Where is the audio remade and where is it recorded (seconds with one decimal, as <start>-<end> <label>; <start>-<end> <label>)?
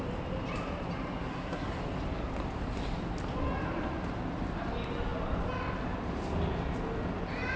0.0-1.3 recorded; 1.3-1.8 remade; 1.8-7.6 recorded